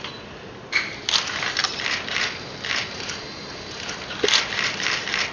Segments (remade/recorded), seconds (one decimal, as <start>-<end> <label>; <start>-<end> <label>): 0.0-5.3 recorded